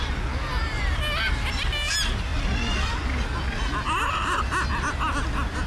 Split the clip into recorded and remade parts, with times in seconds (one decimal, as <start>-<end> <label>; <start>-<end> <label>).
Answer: 0.0-5.7 recorded